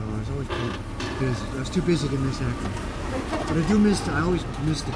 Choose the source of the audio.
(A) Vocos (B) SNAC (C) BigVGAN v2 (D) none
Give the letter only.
D